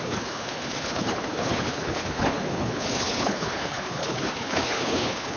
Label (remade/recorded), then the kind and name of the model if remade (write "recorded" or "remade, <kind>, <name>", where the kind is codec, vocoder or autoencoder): remade, codec, HILCodec